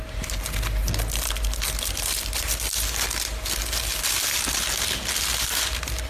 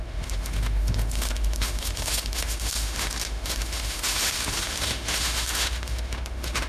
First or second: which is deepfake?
second